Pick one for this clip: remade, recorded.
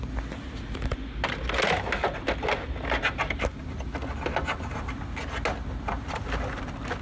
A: recorded